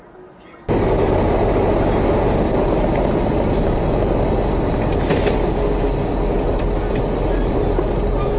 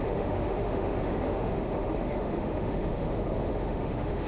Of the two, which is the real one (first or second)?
first